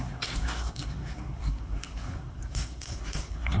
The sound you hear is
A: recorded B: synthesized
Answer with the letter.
B